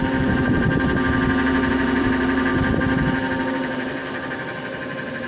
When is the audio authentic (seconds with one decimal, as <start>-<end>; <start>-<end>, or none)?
0.7-1.7; 2.5-3.5

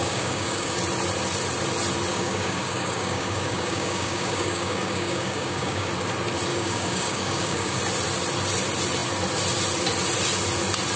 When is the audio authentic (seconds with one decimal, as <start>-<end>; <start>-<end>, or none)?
0.8-2.1; 5.9-6.5; 7.8-11.0

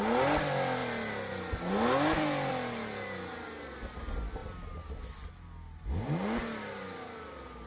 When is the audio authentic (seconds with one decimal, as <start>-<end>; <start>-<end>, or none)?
0.0-7.7

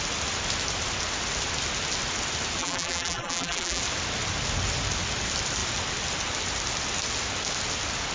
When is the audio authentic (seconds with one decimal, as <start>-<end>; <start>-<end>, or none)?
0.0-2.6; 3.8-8.1